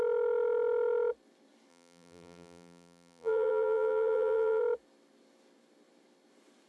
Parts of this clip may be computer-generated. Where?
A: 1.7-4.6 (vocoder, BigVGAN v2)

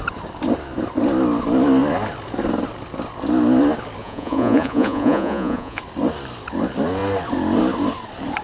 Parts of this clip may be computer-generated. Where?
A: 4.0-5.8 (vocoder, Vocos)

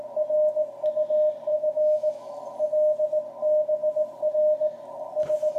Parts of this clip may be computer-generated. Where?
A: 1.5-2.3 (autoencoder, DAC-VAE)

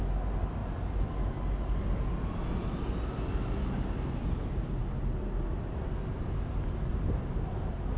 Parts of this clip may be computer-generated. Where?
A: none

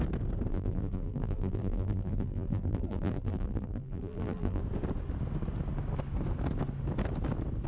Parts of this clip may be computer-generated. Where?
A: 0.5-4.6 (vocoder, BigVGAN v2)

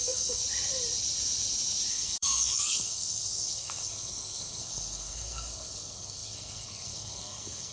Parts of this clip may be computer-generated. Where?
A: 0.0-0.4 (codec, SNAC); 1.9-7.7